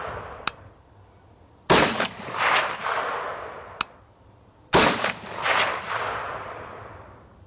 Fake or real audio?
real